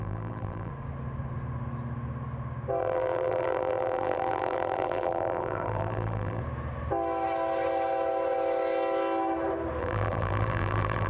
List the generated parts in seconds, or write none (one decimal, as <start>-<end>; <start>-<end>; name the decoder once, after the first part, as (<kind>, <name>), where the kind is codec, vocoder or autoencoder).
0.0-0.7 (vocoder, BigVGAN v2); 2.8-6.4; 9.8-11.1